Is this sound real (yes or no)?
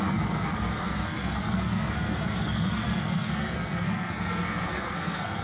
no